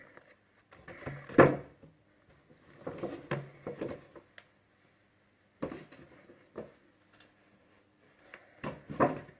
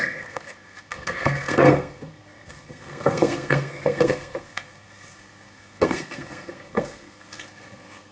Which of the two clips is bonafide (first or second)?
first